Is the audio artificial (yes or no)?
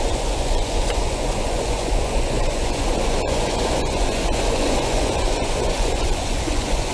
yes